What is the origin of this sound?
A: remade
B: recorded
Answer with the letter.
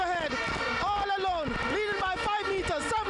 B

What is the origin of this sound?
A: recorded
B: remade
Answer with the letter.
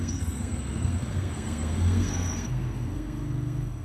B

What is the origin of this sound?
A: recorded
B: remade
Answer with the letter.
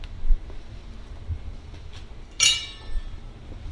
A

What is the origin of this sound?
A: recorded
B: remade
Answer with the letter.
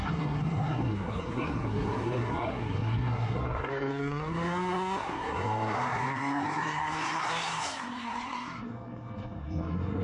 B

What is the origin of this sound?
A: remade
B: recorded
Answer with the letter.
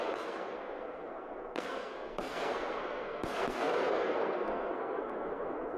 A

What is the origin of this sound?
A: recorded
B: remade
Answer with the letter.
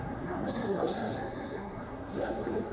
B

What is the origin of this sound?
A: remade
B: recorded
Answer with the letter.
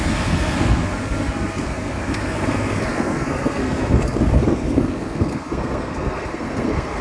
A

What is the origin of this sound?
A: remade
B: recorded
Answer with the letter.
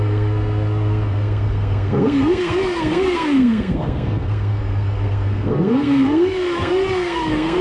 A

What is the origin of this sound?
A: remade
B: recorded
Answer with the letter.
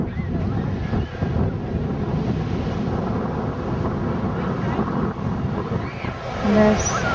B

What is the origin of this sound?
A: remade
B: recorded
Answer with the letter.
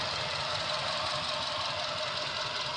B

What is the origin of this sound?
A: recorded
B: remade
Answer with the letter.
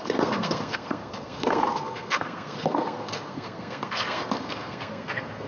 B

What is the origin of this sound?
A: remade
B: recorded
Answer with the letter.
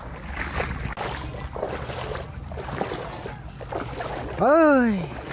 B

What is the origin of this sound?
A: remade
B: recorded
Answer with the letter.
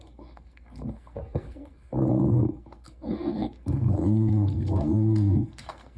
A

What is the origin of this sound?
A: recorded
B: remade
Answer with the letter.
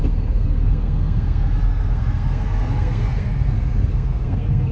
B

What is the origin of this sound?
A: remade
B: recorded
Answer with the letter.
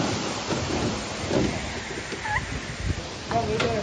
B